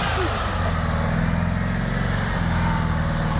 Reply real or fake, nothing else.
real